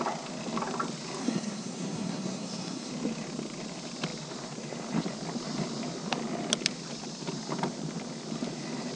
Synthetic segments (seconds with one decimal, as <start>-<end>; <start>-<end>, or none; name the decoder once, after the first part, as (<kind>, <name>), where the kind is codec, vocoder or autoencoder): 1.2-2.9 (codec, SNAC)